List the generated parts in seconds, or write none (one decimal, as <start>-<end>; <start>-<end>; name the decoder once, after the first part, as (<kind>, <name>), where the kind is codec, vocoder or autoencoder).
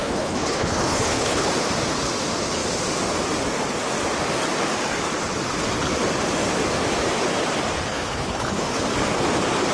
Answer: 0.0-1.5 (codec, HILCodec); 7.9-8.8